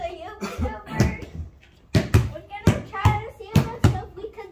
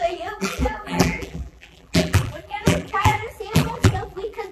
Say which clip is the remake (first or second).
second